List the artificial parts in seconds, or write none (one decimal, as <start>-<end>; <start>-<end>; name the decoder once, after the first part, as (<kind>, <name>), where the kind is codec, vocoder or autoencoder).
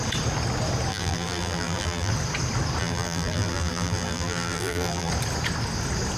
0.9-2.1 (vocoder, BigVGAN v2); 2.8-5.1